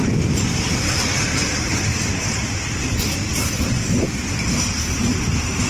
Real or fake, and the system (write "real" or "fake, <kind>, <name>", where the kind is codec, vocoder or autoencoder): real